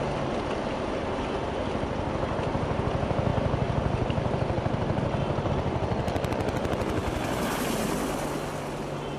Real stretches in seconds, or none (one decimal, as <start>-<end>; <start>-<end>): 0.0-3.3; 5.5-7.0; 7.9-9.2